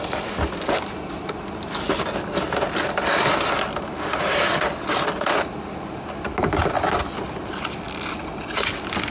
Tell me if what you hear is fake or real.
real